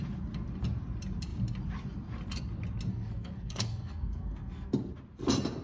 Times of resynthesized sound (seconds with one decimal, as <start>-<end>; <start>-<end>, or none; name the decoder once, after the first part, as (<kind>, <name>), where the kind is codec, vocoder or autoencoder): 2.9-4.7 (codec, SNAC)